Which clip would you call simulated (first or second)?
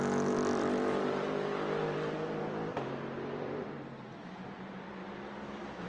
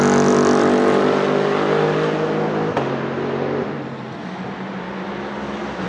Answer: first